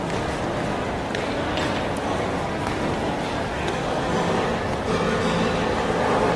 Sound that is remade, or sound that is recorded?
recorded